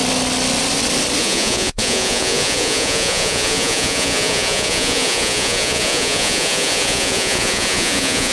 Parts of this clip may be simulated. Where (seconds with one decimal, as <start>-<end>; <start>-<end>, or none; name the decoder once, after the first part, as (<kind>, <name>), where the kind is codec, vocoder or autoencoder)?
1.2-8.3 (vocoder, Vocos)